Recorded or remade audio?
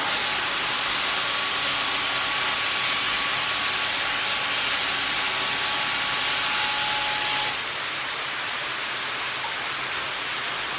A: recorded